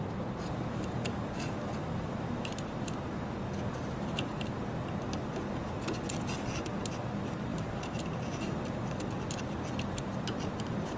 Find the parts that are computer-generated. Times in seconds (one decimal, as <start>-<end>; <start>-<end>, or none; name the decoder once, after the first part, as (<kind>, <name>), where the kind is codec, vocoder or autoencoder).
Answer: 0.0-2.5 (vocoder, BigVGAN v2); 7.5-8.0